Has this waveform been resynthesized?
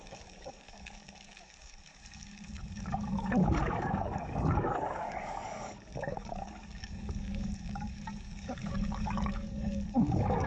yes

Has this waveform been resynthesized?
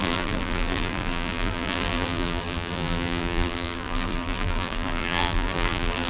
yes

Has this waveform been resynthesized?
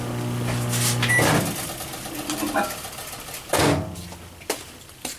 no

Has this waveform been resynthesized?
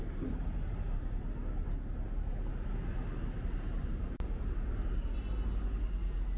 no